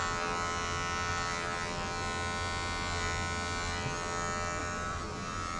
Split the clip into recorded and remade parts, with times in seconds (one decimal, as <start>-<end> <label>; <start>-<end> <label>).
0.0-4.6 recorded; 4.6-5.6 remade